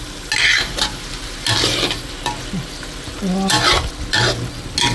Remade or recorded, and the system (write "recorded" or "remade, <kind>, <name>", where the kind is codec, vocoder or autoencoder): recorded